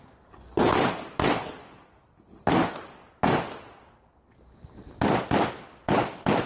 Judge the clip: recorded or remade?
recorded